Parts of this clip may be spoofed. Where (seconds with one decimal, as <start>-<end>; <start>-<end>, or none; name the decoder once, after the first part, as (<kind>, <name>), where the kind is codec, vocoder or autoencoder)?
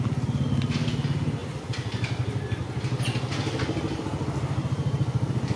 none